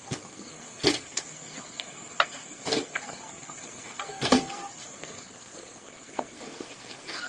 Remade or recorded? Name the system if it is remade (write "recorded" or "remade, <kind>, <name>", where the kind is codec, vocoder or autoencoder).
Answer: remade, codec, SNAC